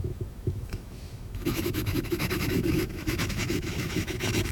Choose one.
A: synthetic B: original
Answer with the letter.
A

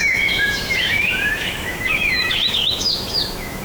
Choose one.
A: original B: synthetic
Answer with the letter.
B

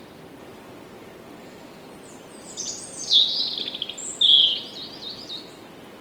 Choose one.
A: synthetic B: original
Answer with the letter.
B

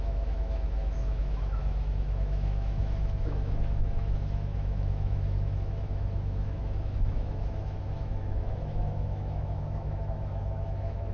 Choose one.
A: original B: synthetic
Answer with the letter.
B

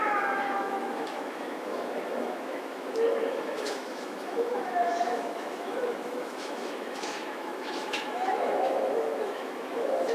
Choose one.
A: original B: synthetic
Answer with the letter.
B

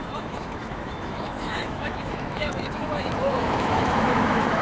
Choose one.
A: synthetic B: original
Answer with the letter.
A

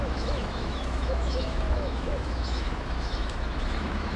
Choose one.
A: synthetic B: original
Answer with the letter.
A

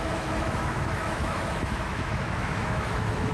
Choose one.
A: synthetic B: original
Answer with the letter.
A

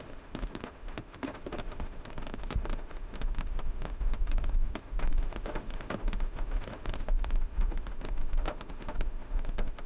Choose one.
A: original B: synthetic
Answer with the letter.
B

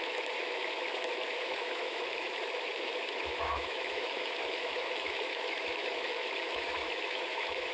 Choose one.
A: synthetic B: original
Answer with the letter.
A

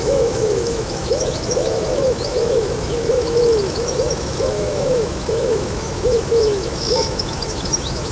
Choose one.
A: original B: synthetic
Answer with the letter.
B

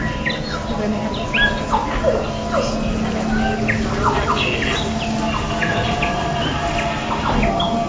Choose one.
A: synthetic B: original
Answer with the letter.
B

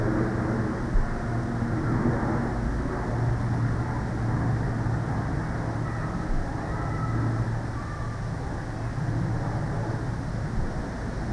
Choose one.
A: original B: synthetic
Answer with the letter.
A